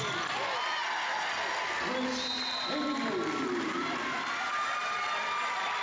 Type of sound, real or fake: real